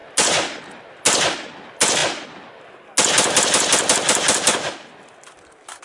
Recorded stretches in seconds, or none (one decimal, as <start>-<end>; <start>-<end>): 0.0-5.8